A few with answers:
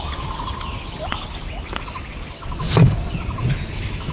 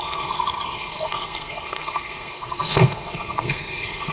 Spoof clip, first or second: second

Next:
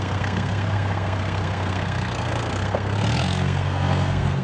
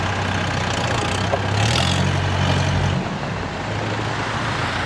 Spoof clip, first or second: first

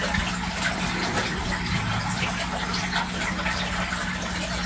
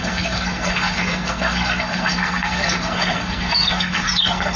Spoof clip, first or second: second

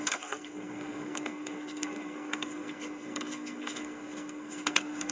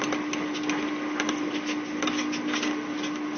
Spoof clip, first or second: first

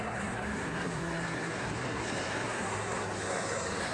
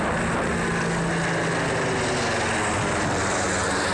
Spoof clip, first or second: first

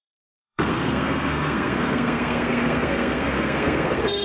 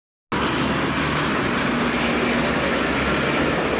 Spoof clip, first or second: first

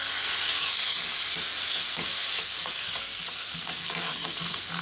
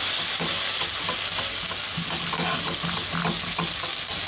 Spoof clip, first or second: first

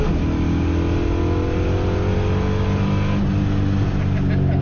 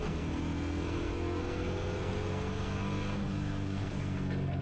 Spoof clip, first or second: second